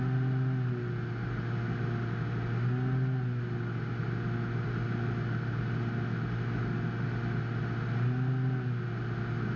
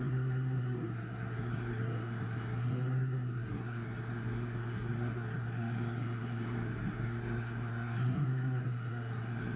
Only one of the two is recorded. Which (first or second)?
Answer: first